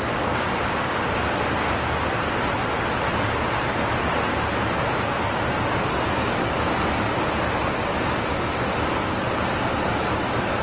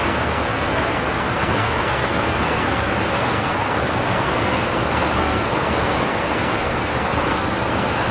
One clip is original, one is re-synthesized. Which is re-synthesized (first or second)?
second